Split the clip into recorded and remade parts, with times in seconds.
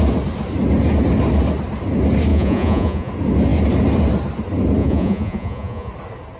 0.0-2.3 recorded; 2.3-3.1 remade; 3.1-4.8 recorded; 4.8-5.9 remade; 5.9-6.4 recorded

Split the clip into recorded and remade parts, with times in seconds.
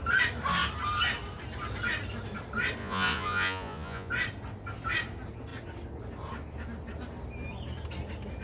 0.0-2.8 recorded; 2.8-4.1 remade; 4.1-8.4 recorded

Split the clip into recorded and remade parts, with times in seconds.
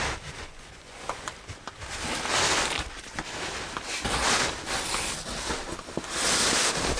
0.0-0.4 recorded; 0.4-1.3 remade; 1.3-7.0 recorded